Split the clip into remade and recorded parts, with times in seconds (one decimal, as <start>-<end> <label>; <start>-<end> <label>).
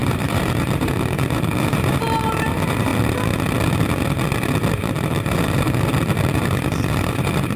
0.0-2.9 remade; 2.9-4.7 recorded; 4.7-7.6 remade